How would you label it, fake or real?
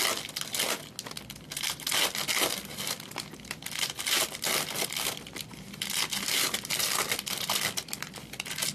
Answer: real